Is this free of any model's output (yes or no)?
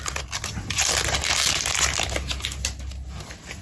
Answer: yes